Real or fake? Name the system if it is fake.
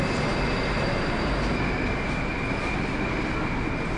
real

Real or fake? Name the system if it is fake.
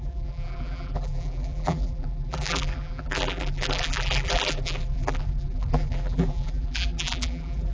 fake, vocoder, BigVGAN v2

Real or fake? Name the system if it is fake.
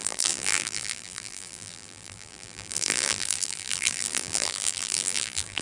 fake, vocoder, BigVGAN v2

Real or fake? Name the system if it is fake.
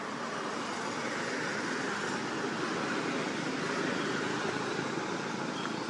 real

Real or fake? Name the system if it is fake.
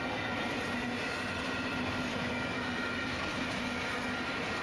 real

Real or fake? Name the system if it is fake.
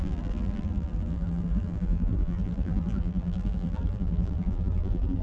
fake, vocoder, BigVGAN v2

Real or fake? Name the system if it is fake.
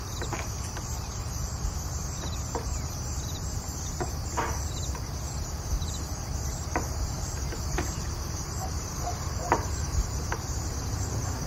fake, vocoder, BigVGAN v2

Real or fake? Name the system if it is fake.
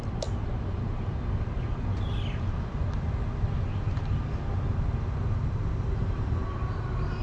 real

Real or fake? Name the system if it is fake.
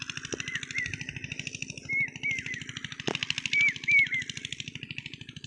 real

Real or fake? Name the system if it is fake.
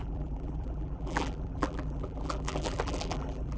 fake, vocoder, BigVGAN v2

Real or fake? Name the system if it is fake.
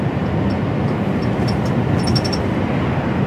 real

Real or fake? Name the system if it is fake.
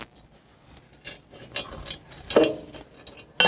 real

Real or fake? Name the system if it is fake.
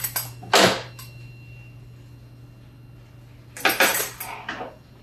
real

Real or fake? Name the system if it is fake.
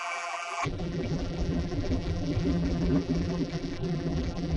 fake, vocoder, BigVGAN v2